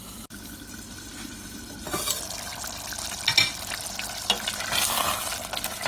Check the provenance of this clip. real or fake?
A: real